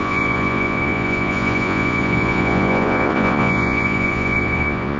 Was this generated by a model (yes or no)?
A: yes